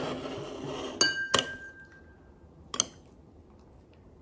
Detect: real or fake real